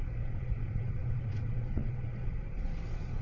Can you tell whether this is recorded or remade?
remade